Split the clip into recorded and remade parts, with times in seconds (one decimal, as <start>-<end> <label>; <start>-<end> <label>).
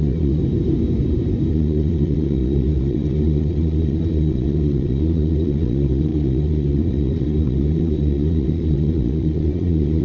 0.0-0.4 remade; 0.4-1.5 recorded; 1.5-10.0 remade